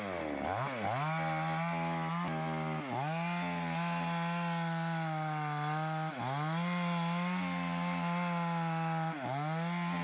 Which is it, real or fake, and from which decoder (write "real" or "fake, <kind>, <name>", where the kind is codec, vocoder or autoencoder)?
real